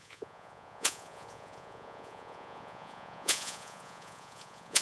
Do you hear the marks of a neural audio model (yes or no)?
yes